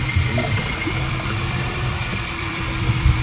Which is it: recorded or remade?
remade